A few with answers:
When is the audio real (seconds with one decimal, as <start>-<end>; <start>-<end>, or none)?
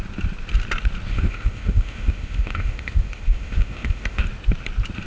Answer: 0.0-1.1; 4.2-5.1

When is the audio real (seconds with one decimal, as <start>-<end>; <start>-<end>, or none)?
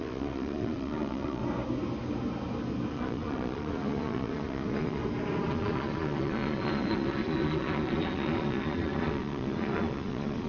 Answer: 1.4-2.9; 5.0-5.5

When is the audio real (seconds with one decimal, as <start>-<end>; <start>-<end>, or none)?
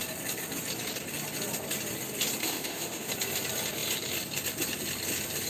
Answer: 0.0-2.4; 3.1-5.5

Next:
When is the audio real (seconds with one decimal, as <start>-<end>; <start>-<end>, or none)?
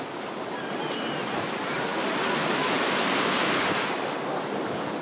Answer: 0.0-5.0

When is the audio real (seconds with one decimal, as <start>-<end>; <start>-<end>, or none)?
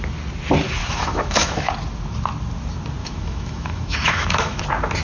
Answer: 0.0-0.8; 1.7-3.0; 4.6-5.0